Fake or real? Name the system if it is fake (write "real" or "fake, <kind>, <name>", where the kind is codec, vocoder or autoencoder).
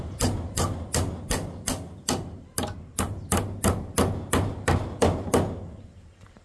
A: real